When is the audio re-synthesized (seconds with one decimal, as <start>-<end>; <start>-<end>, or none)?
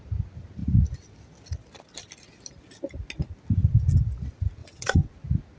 4.6-5.1